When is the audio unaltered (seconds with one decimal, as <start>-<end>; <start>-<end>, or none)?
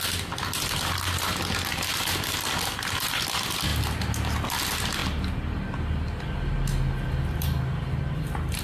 0.0-8.6